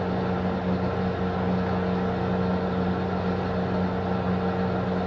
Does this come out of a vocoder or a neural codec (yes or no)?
no